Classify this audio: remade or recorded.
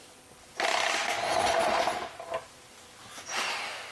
recorded